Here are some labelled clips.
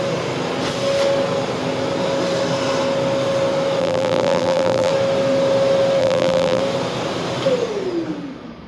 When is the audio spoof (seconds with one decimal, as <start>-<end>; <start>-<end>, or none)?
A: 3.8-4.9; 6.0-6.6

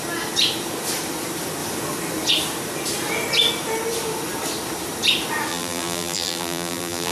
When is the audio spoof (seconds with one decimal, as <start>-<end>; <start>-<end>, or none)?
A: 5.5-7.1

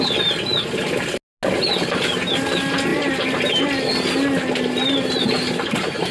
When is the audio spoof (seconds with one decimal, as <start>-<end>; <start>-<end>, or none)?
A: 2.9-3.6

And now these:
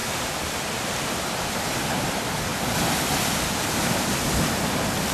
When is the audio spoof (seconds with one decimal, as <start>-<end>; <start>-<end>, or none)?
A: none

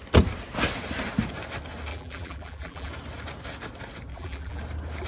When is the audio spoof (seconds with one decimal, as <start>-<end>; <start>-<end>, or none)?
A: 1.9-2.9; 4.1-4.6

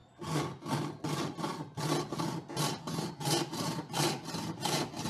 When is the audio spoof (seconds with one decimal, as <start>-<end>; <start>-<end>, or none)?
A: none

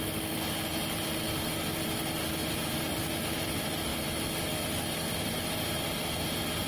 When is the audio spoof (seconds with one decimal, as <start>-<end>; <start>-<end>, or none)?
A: 2.4-3.0

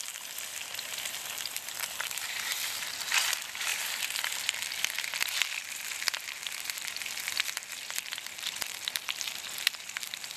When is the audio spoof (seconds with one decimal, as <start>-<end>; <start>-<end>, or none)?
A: 0.0-10.4